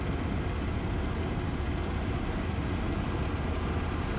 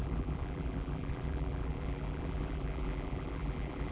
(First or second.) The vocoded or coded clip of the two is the second